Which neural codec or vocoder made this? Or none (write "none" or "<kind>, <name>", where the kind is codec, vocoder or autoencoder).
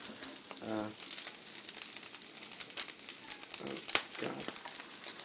none